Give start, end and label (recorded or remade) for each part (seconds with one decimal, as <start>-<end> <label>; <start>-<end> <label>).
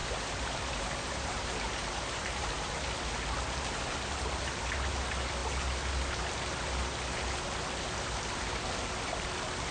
0.0-2.7 remade; 2.7-9.7 recorded